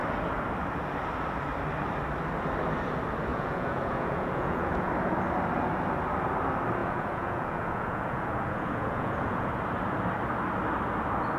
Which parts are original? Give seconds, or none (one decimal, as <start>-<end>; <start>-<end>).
0.0-3.3; 4.9-6.8; 9.5-11.4